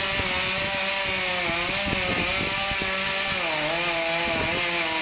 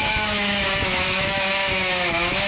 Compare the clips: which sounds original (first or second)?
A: first